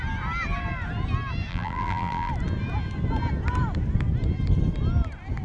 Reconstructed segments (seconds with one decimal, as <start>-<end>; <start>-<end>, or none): 1.5-2.3